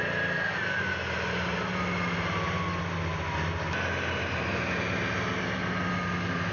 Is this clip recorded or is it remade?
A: recorded